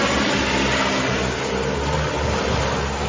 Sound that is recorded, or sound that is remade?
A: recorded